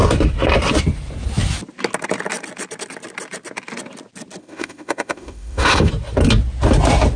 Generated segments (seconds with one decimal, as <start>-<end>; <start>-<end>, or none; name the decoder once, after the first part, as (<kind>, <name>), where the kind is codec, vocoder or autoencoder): 4.4-5.9 (autoencoder, DAC-VAE)